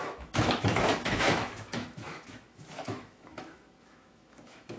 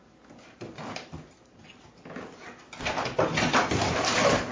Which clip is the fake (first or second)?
first